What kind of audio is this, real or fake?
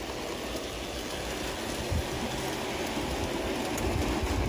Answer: real